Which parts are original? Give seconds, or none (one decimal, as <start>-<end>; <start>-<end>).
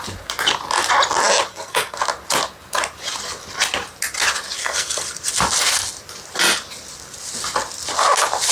0.0-1.5; 2.0-4.6; 5.3-8.5